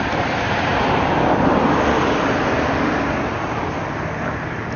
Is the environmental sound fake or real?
fake